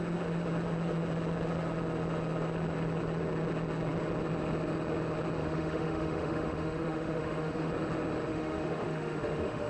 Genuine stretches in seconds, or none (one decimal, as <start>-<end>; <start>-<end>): 0.0-5.4; 7.7-8.3